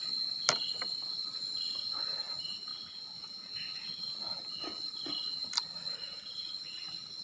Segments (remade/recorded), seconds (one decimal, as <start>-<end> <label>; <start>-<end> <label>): 0.0-7.2 recorded